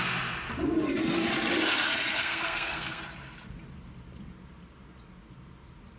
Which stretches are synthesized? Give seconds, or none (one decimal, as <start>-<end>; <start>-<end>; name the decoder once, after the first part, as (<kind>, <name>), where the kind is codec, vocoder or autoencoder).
2.2-3.0 (codec, SNAC)